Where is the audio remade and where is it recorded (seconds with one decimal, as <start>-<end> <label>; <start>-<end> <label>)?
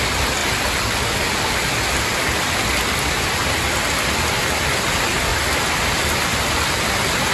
0.0-7.3 recorded